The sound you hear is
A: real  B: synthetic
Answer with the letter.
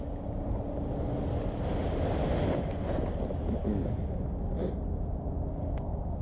A